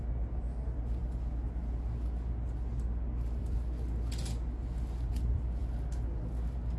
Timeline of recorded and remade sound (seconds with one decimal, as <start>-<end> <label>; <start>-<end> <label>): 0.0-6.8 recorded